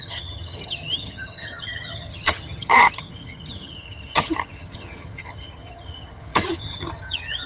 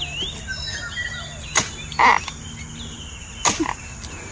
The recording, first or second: second